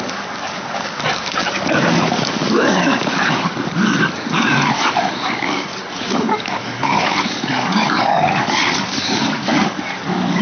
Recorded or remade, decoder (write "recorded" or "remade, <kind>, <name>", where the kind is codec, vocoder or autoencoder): remade, codec, DAC